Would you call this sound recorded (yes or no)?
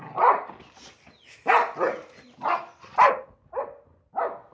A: yes